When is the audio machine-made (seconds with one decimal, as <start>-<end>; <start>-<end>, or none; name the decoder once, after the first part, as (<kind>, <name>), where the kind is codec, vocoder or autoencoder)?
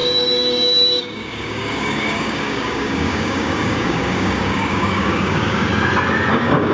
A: 0.0-5.7 (codec, DAC); 6.3-6.7